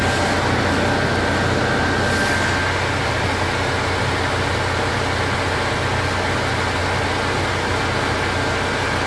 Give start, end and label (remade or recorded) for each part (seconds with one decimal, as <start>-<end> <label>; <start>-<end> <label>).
0.0-9.1 recorded